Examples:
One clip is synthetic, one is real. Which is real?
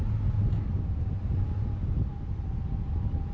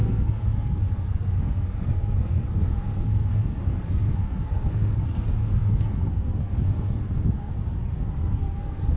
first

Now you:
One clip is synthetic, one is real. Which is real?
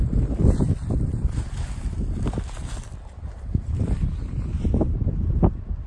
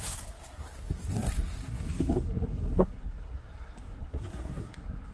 first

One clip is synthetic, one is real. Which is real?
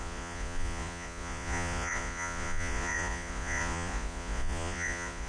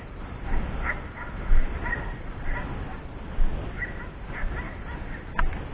second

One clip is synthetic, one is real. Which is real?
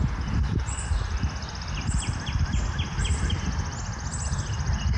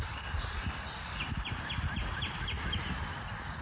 first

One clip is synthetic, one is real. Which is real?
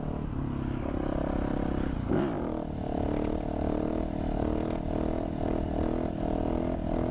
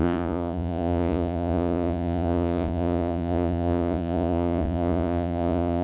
first